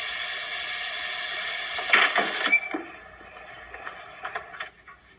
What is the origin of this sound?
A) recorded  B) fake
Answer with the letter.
A